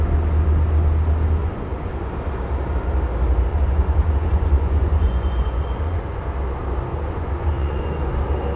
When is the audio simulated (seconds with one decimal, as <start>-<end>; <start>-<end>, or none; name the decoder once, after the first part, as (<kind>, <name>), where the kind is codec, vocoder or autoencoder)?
1.4-1.9 (vocoder, Vocos); 3.5-6.2; 6.9-7.9